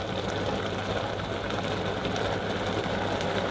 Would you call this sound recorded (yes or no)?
yes